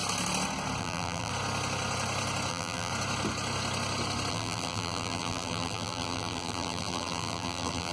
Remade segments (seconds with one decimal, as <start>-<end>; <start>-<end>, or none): 0.8-1.3; 2.5-2.9; 4.3-7.9